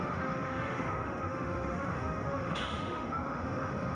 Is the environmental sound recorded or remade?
remade